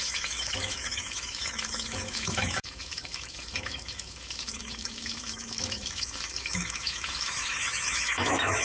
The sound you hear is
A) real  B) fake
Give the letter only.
B